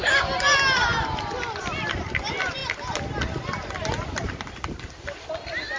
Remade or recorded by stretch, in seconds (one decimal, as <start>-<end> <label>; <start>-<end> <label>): 0.0-5.8 recorded